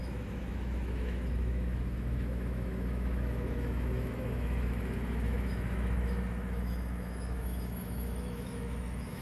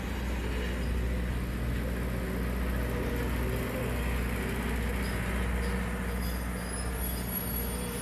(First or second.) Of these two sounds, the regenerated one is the first